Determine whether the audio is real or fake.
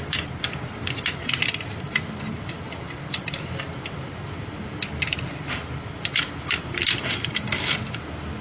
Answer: real